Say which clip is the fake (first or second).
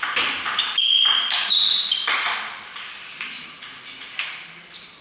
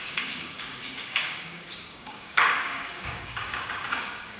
second